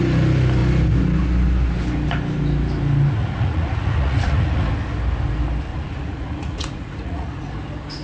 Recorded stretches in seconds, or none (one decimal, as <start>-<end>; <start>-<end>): 0.0-3.2; 4.7-5.7; 7.5-8.0